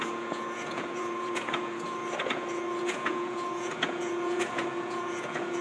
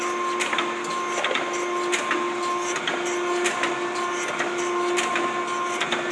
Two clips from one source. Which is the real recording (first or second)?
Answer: second